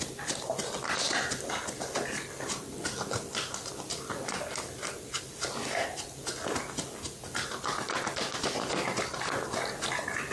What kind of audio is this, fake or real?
real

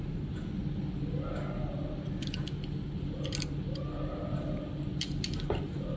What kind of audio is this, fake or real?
real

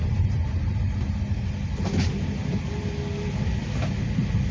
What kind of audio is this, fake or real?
real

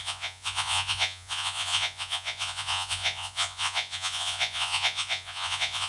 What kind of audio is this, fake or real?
fake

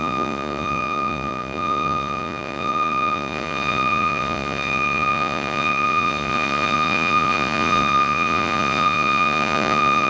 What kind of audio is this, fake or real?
fake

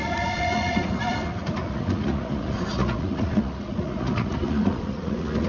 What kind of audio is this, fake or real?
fake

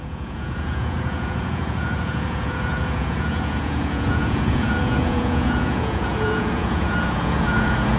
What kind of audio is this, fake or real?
fake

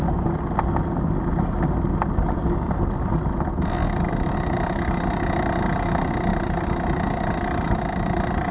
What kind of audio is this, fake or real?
real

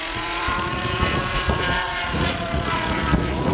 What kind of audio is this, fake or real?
fake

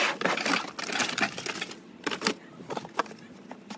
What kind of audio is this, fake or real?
real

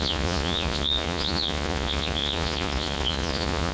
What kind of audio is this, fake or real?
fake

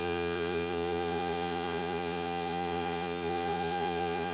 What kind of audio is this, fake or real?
fake